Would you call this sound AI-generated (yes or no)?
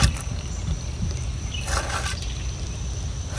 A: no